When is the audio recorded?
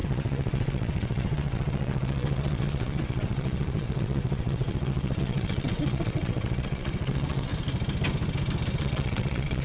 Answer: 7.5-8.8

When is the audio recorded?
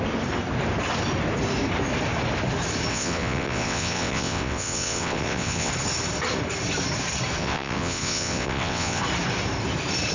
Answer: 0.0-2.9; 5.7-7.4; 9.0-10.1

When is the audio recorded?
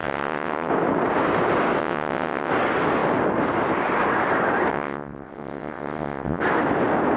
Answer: 0.7-1.8; 2.5-4.7; 6.4-7.2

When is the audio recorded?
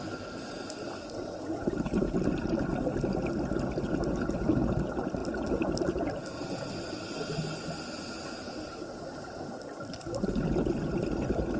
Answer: 0.0-11.6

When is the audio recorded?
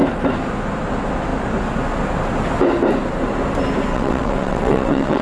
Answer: 0.0-3.9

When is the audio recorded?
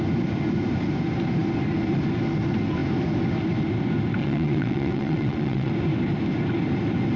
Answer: 0.0-4.2; 5.7-7.2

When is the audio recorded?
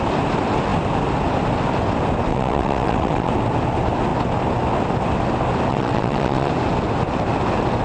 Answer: 0.0-2.3; 3.3-5.7; 6.5-7.8